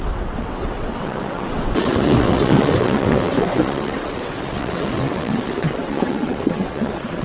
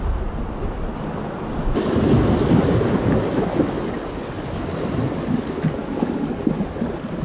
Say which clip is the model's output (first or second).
first